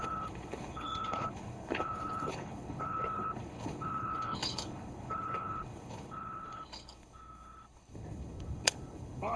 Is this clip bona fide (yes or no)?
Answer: no